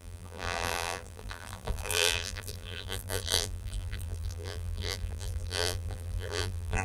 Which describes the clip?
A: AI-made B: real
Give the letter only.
A